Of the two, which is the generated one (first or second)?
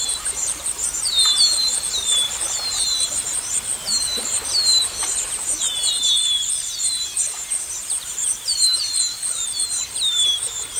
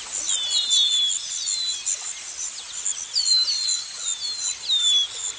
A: first